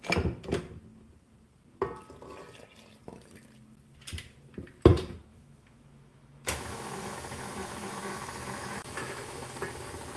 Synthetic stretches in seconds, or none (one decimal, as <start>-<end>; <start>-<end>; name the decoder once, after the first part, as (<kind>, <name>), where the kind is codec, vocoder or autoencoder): 5.3-9.6 (autoencoder, DAC-VAE)